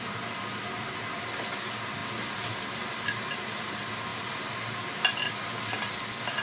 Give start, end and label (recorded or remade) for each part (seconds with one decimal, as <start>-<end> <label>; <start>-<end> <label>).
0.0-6.4 recorded